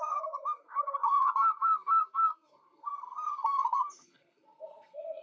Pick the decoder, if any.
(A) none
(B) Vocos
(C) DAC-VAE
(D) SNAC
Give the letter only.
D